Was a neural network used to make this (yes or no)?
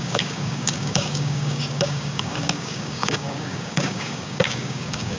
yes